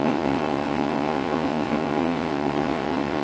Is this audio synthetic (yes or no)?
yes